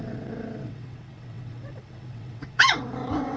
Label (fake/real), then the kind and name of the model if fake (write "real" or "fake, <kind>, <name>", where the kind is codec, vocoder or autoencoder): fake, vocoder, WaveNeXt